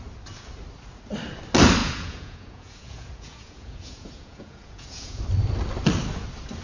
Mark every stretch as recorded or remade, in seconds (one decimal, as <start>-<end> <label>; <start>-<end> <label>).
0.0-1.8 recorded; 1.8-5.2 remade; 5.2-6.6 recorded